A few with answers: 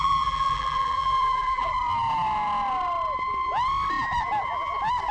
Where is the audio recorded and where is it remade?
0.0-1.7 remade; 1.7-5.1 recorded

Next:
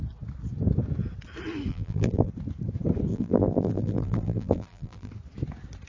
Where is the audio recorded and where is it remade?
0.0-1.7 recorded; 1.7-2.3 remade; 2.3-3.1 recorded; 3.1-5.1 remade; 5.1-5.9 recorded